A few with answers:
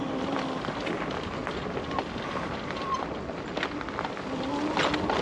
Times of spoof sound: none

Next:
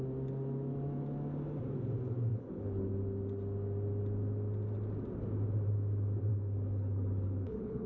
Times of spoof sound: 2.3-2.9 (codec, HILCodec); 6.3-7.9

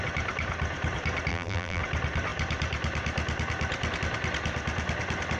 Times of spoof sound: 1.3-1.8 (vocoder, BigVGAN v2)

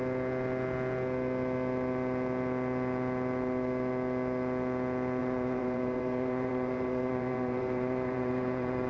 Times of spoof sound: 5.2-8.9 (vocoder, BigVGAN v2)

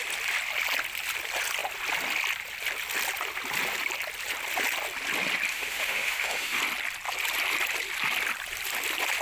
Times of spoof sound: 5.5-6.6 (autoencoder, DAC-VAE)

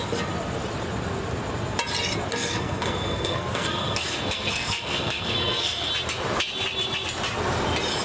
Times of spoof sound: 2.3-5.9 (codec, SNAC)

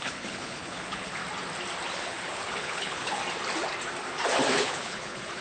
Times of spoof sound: 0.0-1.2 (codec, HILCodec); 1.9-3.2; 4.5-5.4